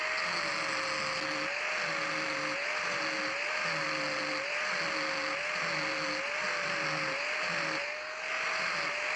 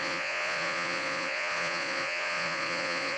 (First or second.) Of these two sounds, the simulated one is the second